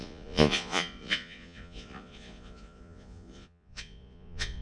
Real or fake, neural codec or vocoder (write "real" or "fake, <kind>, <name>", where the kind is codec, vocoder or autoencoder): fake, vocoder, Vocos